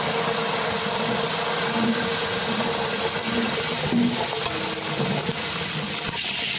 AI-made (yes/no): no